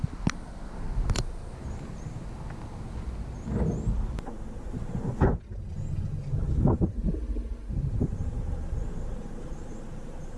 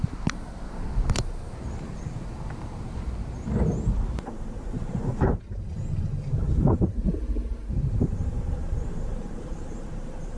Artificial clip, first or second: second